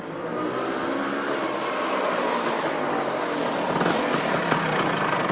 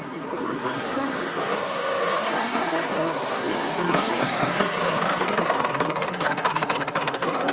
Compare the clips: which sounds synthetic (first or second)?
second